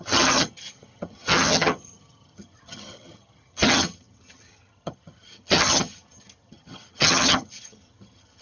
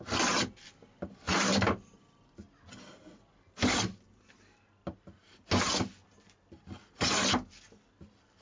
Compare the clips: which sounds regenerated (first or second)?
first